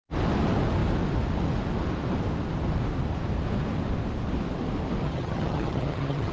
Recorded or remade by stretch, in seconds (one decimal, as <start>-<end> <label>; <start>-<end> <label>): 0.0-5.0 recorded; 5.0-6.3 remade